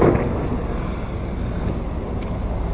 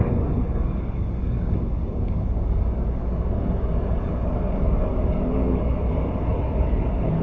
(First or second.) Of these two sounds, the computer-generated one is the second